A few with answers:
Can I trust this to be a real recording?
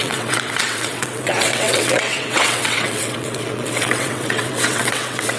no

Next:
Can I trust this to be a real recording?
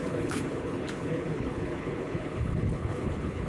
no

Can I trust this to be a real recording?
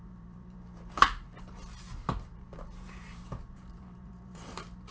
no